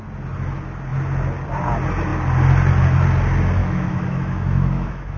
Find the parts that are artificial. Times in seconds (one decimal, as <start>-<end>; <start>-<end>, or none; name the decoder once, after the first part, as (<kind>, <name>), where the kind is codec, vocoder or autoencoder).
3.6-5.2 (autoencoder, DAC-VAE)